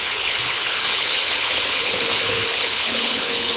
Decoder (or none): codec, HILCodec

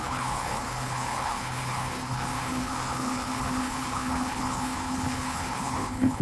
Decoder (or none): codec, HILCodec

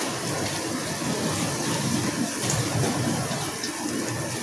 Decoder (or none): none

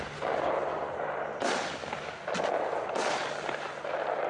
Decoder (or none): none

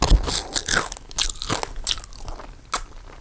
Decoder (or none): none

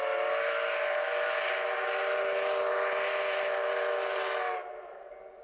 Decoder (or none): none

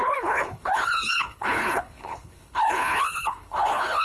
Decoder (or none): codec, HILCodec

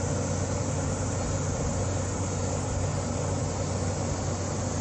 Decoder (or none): none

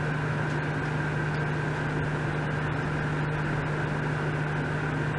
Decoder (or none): none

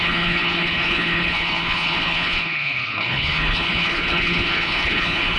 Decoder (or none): codec, HILCodec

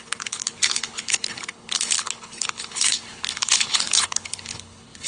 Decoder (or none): codec, HILCodec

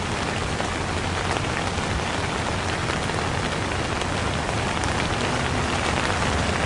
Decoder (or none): none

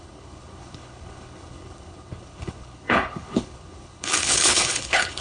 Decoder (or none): codec, HILCodec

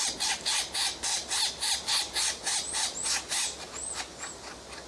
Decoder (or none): none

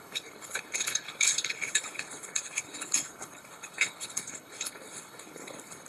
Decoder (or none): codec, HILCodec